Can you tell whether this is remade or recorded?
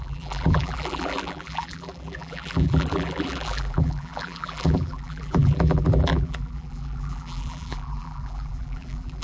remade